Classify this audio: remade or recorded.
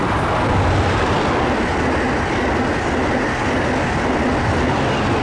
recorded